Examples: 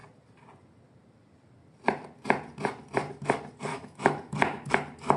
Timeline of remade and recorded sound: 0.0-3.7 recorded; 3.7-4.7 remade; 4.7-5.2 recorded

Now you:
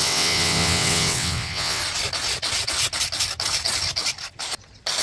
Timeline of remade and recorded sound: 0.0-1.8 remade; 1.8-5.0 recorded

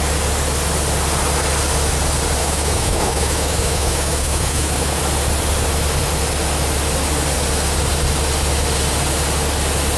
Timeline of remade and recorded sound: 0.0-2.4 recorded; 2.4-5.0 remade; 5.0-10.0 recorded

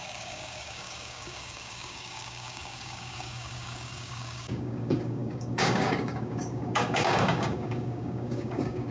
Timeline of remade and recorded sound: 0.0-8.9 remade